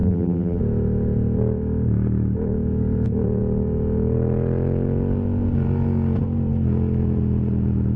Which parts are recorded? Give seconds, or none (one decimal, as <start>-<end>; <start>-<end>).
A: 0.6-8.0